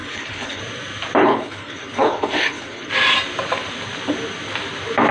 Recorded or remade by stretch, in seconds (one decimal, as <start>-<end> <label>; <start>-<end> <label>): 0.0-0.6 remade; 0.6-1.2 recorded; 1.2-2.9 remade; 2.9-5.1 recorded